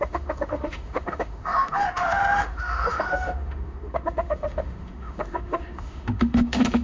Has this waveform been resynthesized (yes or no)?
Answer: yes